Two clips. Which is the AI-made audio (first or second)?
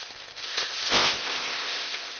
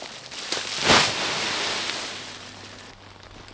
first